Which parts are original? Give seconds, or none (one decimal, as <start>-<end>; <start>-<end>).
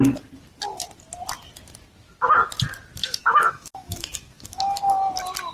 0.0-3.0; 4.8-5.5